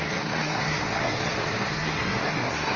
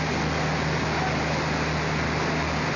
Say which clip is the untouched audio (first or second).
second